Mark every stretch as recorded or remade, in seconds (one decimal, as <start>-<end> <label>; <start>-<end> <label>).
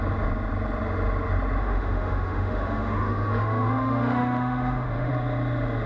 0.0-1.6 recorded; 1.6-5.1 remade; 5.1-5.9 recorded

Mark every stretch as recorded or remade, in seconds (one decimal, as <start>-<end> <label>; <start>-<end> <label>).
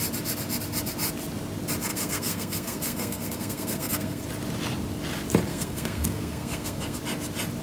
0.0-1.9 recorded; 1.9-4.2 remade; 4.2-5.5 recorded; 5.5-7.0 remade; 7.0-7.6 recorded